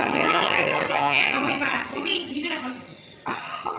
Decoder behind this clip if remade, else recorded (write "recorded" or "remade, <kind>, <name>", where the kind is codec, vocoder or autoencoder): remade, vocoder, HiFi-GAN